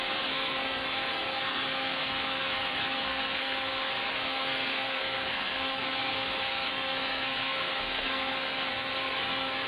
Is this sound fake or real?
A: fake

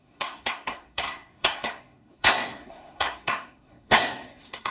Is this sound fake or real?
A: fake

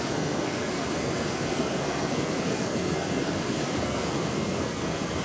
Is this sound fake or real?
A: fake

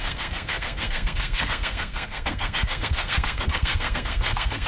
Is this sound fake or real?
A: fake